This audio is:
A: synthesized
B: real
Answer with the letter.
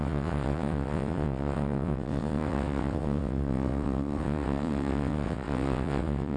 A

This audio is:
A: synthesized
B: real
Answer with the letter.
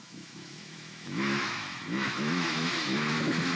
A